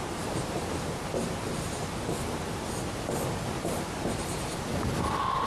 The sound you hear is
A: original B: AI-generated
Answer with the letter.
A